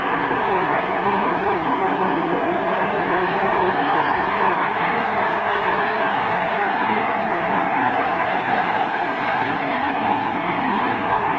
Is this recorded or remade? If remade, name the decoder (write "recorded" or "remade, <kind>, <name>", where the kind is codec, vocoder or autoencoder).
remade, codec, SNAC